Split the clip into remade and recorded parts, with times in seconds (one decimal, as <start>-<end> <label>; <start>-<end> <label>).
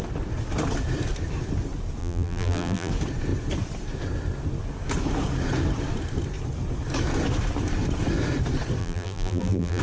0.0-2.0 recorded; 2.0-2.9 remade; 2.9-8.8 recorded; 8.8-9.8 remade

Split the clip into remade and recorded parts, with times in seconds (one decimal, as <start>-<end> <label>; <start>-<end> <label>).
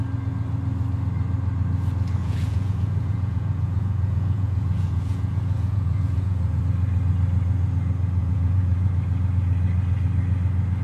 0.0-2.2 recorded; 2.2-6.6 remade; 6.6-8.2 recorded; 8.2-8.9 remade; 8.9-10.8 recorded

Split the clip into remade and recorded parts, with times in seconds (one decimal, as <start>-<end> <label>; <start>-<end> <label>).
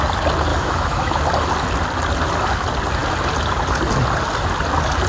0.0-0.5 recorded; 0.5-1.2 remade; 1.2-5.1 recorded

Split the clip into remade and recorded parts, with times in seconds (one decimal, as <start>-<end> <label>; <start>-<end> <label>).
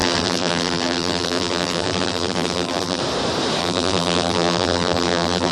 0.0-3.0 remade; 3.0-3.6 recorded; 3.6-5.5 remade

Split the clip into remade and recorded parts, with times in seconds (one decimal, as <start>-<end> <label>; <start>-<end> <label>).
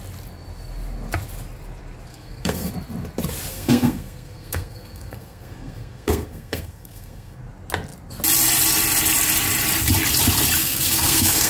0.0-2.1 recorded; 2.1-2.7 remade; 2.7-3.5 recorded; 3.5-7.4 remade; 7.4-10.6 recorded; 10.6-11.5 remade